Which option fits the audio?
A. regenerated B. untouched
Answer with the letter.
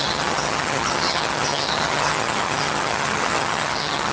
A